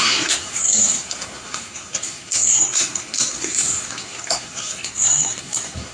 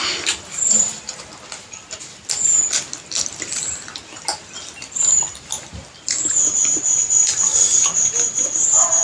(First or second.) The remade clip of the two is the first